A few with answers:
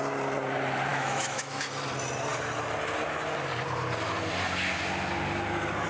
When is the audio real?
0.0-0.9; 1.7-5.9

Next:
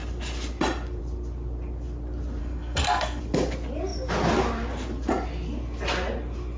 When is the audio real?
0.0-2.4; 3.2-6.6

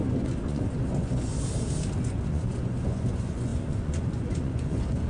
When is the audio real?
1.3-2.0

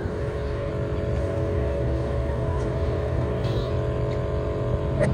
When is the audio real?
0.7-1.2; 3.7-5.1

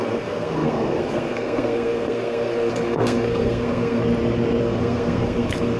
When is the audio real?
4.0-4.6

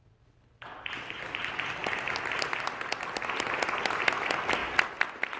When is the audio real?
0.0-5.4